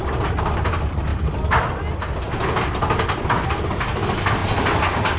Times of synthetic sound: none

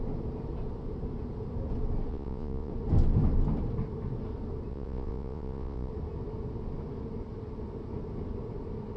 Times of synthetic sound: 2.1-2.7 (vocoder, Vocos); 4.7-5.9

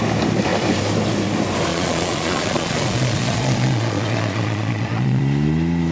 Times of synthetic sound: 1.7-5.2 (vocoder, Vocos)

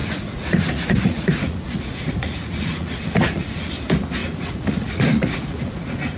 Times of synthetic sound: 0.0-3.7 (vocoder, Vocos); 4.2-6.2

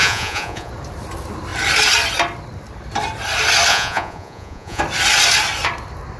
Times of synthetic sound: 0.0-0.7 (vocoder, Vocos); 3.7-4.8